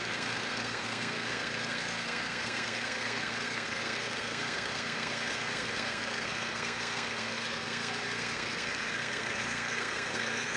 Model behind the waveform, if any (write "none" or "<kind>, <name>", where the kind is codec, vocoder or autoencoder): codec, SNAC